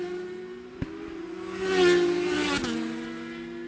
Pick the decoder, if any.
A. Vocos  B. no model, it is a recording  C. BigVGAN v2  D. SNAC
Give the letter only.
B